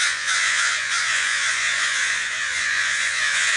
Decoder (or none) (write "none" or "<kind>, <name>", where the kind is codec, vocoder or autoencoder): vocoder, Vocos